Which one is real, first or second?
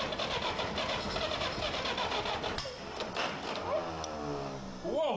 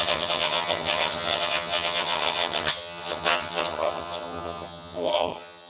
first